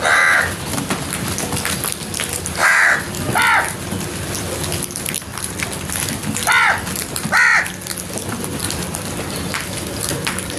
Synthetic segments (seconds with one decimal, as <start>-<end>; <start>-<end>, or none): none